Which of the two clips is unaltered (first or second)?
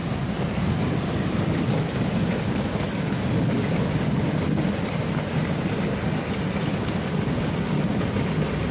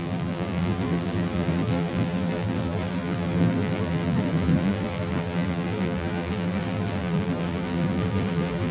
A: first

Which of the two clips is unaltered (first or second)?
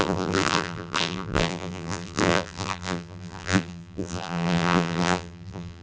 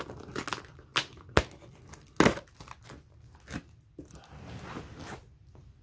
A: second